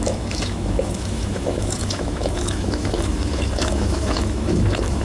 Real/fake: fake